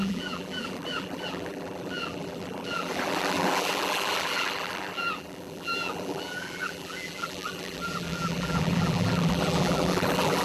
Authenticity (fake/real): fake